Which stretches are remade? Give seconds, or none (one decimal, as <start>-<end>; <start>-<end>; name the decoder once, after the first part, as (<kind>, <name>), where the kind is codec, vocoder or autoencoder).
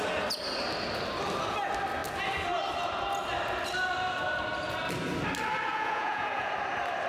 5.7-6.5 (vocoder, Vocos)